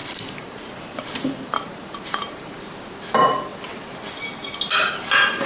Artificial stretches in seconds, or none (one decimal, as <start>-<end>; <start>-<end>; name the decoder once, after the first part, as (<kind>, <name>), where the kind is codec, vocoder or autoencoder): 0.0-2.6 (vocoder, BigVGAN v2)